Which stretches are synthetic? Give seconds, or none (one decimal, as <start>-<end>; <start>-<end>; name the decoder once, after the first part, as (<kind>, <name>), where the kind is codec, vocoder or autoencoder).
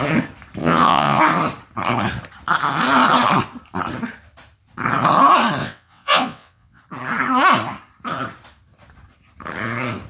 0.6-1.2 (vocoder, WaveNeXt); 5.6-6.8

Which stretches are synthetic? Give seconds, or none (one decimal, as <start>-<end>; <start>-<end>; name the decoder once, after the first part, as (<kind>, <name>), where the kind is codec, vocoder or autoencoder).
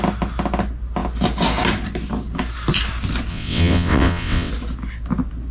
3.3-4.5 (vocoder, WaveNeXt)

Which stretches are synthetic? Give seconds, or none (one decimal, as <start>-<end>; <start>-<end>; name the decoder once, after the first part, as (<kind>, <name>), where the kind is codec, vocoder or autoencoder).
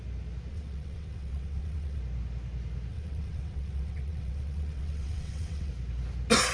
0.5-2.0 (vocoder, WaveNeXt); 2.9-5.7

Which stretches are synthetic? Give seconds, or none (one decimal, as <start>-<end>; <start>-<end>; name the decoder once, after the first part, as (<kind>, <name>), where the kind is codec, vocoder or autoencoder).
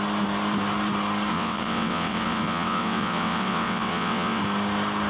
1.3-4.4 (vocoder, WaveNeXt)